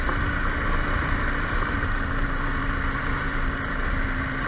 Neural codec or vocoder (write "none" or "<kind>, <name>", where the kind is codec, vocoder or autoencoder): none